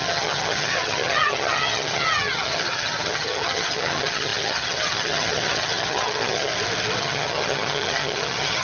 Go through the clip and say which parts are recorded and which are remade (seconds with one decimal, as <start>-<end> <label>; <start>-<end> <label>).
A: 0.0-6.5 remade; 6.5-7.0 recorded; 7.0-8.6 remade